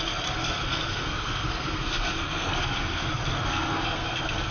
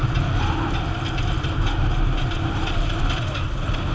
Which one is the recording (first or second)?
second